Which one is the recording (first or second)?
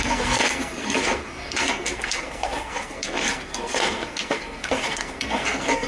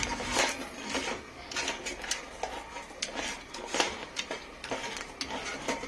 second